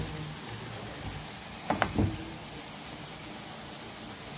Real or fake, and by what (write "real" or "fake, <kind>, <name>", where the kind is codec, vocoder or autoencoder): real